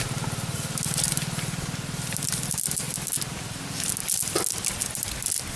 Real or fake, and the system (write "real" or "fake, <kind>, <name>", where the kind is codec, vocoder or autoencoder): real